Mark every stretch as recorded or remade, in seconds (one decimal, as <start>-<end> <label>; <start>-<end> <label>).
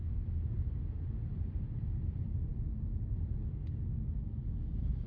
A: 0.0-5.1 recorded